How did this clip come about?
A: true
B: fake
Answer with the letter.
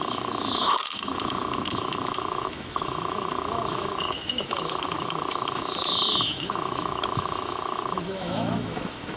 B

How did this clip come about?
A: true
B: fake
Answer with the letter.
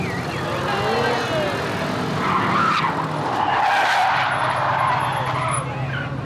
A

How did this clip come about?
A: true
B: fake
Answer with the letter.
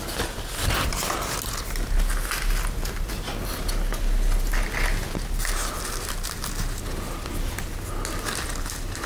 A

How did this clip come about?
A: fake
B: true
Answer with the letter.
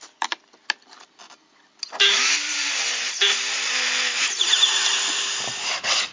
B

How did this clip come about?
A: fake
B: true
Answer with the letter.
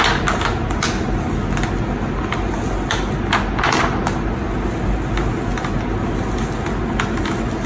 B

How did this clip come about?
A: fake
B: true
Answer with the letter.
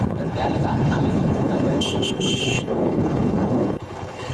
A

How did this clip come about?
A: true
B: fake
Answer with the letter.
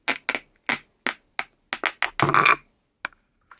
A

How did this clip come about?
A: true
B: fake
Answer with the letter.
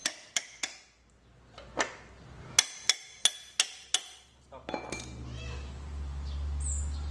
A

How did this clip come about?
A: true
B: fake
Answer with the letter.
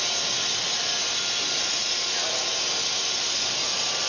A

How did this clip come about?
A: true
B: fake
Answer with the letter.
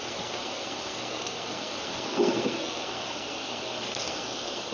B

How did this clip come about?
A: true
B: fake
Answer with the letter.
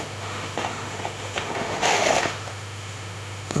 B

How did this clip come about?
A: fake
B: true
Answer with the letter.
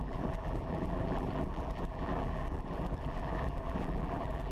A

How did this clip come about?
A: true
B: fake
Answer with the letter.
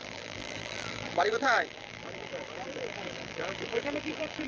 B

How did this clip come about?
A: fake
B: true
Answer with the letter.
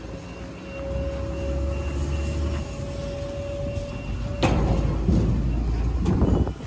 B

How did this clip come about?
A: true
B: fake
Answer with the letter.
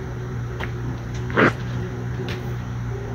B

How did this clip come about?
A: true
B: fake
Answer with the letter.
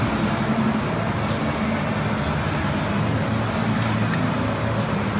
A